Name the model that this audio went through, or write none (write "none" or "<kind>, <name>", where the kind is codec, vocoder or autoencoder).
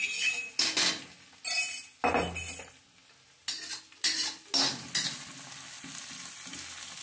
none